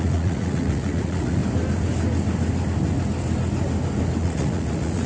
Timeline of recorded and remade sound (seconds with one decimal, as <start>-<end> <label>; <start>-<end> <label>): 0.0-1.4 remade; 1.4-4.2 recorded; 4.2-5.1 remade